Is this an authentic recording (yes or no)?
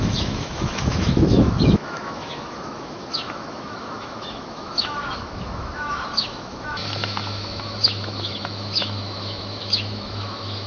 no